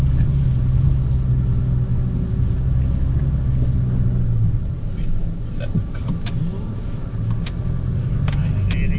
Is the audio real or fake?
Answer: real